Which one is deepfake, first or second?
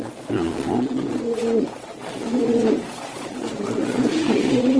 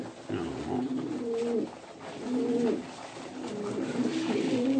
first